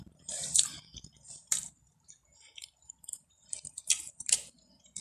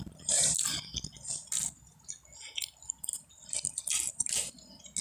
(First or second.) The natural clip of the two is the second